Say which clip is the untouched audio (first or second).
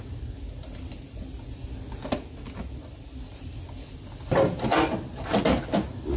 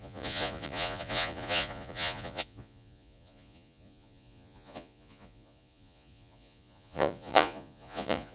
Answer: first